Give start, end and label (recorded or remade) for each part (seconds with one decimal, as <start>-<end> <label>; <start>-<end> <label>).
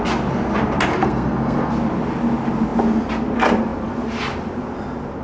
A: 0.0-0.9 recorded; 0.9-1.7 remade; 1.7-5.2 recorded